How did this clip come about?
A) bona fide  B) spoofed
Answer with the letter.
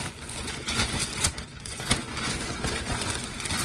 B